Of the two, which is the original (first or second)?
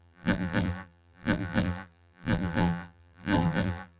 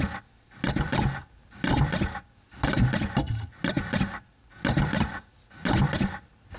second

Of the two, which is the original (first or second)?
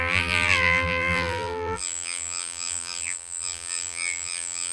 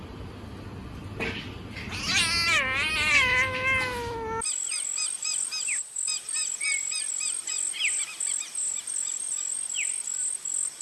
second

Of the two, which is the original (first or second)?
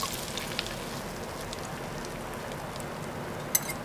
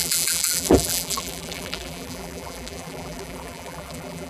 first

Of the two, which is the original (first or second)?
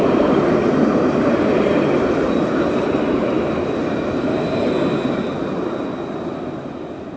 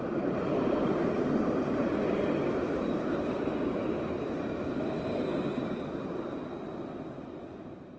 first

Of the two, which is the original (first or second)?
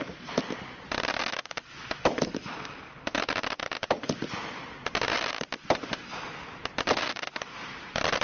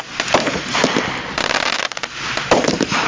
second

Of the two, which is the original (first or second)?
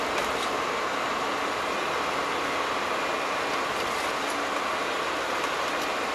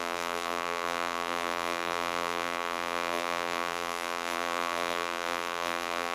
first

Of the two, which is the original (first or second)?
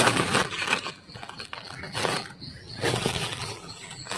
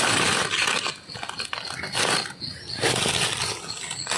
second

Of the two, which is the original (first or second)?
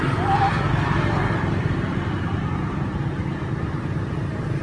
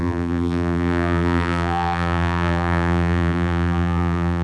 first